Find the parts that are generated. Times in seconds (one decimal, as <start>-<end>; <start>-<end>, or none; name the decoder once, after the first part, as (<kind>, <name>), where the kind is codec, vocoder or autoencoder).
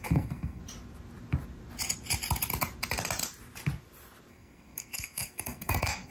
0.0-0.6 (codec, SNAC); 4.3-6.1